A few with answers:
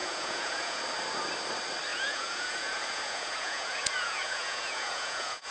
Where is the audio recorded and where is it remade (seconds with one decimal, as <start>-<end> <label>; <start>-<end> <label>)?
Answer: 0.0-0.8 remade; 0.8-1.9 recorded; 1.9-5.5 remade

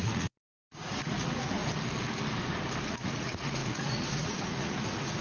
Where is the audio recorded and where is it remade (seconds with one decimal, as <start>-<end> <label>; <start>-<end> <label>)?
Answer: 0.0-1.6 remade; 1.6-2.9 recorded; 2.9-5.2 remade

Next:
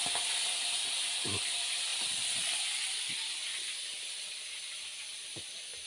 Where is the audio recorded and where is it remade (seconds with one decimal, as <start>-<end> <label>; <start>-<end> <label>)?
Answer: 0.0-5.9 recorded

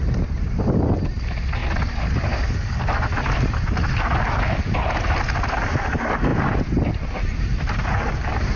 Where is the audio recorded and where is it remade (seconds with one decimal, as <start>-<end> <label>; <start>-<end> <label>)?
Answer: 0.0-8.6 recorded